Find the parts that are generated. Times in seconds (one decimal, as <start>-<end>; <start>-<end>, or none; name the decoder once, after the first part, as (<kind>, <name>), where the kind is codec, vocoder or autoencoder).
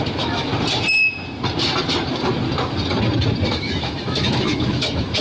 0.0-0.5 (autoencoder, DAC-VAE); 3.5-5.2